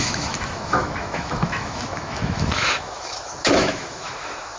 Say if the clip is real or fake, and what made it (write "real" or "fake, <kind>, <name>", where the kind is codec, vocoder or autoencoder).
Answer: fake, autoencoder, DAC-VAE